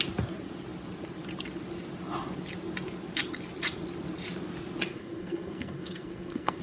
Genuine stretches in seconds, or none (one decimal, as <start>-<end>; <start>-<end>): 0.0-4.9